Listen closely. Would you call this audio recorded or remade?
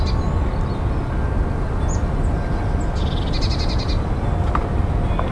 recorded